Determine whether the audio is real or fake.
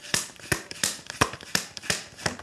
fake